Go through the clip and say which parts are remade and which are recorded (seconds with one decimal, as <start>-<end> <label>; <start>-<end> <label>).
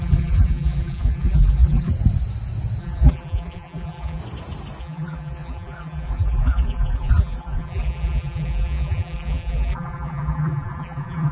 0.0-1.9 remade; 1.9-2.8 recorded; 2.8-4.2 remade; 4.2-4.8 recorded; 4.8-11.3 remade